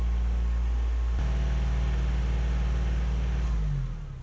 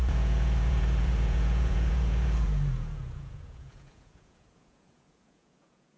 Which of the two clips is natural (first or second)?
first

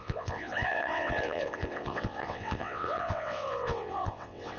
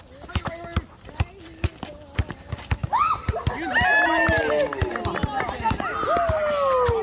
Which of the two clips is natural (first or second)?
second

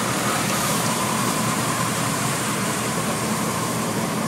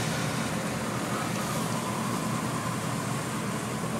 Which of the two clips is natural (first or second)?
second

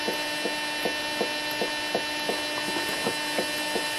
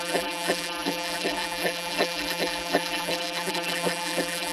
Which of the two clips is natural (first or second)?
first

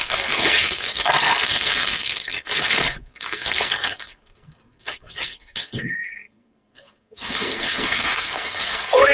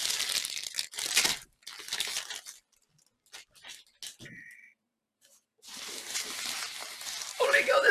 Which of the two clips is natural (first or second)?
second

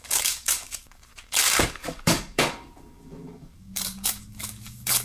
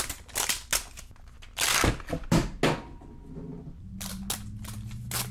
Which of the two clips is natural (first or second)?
second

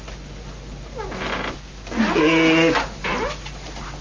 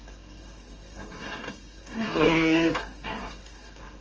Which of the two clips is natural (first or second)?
first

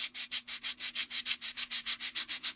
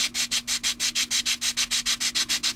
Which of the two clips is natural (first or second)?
second